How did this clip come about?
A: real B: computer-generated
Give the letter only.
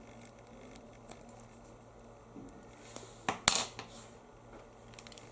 A